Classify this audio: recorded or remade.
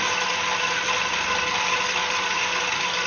recorded